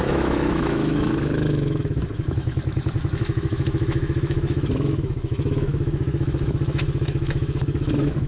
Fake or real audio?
fake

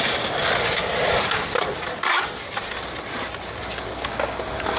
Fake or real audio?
real